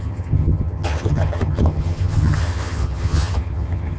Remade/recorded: remade